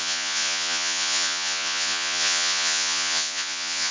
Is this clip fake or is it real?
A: fake